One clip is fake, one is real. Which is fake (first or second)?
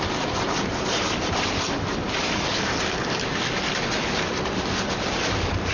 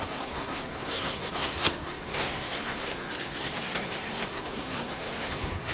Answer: second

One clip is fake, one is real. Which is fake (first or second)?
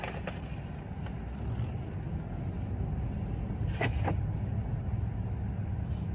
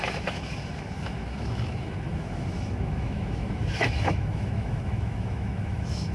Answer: second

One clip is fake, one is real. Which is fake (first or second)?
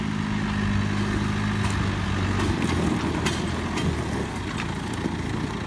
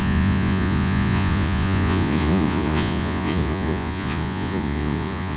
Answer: second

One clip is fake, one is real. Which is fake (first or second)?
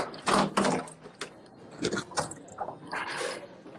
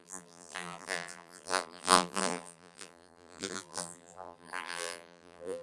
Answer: second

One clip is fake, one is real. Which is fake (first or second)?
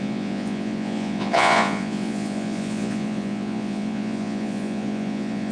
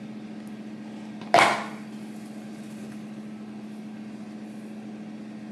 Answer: first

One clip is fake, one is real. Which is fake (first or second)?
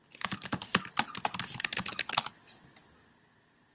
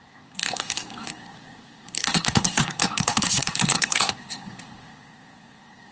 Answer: second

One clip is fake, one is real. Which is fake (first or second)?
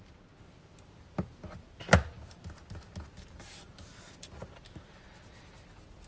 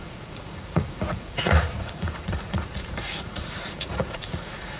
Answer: second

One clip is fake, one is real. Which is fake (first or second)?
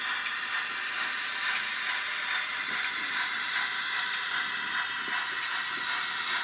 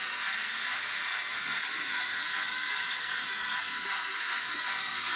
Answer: second